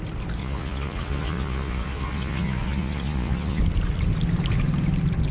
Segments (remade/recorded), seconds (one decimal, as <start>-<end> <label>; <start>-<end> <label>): 0.0-0.4 recorded; 0.4-3.6 remade; 3.6-5.3 recorded